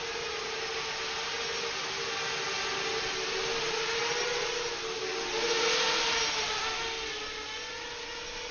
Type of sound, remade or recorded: recorded